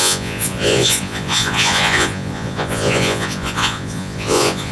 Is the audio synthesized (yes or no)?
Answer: yes